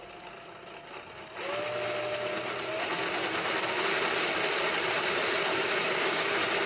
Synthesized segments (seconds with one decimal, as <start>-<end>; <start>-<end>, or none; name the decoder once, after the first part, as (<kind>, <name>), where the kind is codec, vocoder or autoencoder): 5.8-6.3 (codec, DAC)